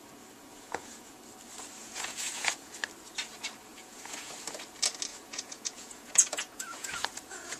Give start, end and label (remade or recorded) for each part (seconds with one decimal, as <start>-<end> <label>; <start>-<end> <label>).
0.0-0.5 recorded; 0.5-1.2 remade; 1.2-1.8 recorded; 1.8-2.7 remade; 2.7-3.7 recorded; 3.7-4.3 remade; 4.3-5.1 recorded; 5.1-7.6 remade